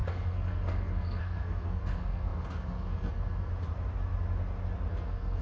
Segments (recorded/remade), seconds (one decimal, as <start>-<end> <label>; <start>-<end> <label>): 0.0-3.5 remade; 3.5-4.9 recorded; 4.9-5.4 remade